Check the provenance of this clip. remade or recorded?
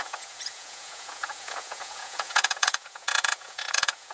remade